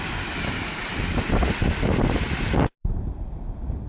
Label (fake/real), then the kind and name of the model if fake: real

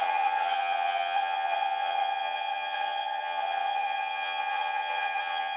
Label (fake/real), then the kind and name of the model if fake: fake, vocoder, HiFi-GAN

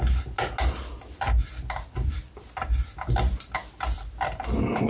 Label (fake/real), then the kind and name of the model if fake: real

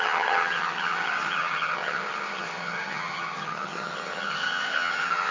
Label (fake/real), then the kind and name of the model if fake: fake, vocoder, HiFi-GAN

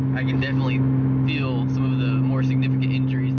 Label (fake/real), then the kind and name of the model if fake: real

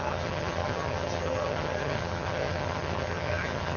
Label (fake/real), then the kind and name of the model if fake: fake, vocoder, HiFi-GAN